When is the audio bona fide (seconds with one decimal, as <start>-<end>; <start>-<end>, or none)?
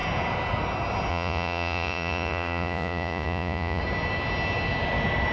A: 0.0-1.1; 3.8-5.3